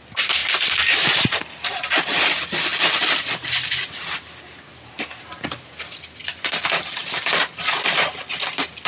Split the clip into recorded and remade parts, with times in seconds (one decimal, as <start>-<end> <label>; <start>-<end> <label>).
0.0-8.9 recorded